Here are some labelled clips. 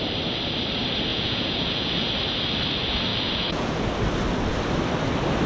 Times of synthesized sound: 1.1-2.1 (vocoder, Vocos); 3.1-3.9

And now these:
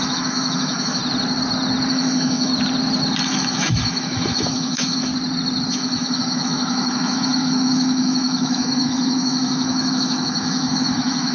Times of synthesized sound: 0.0-1.0 (autoencoder, DAC-VAE); 1.9-2.5; 3.2-5.1; 5.7-11.3

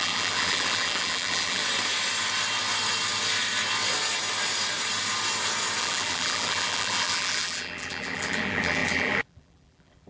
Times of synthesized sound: 0.0-1.6 (vocoder, BigVGAN v2); 5.8-10.1

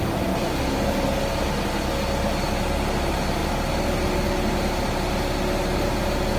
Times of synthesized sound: none

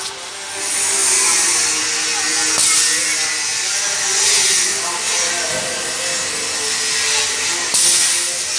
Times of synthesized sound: none

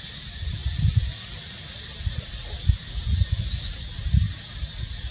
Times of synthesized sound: none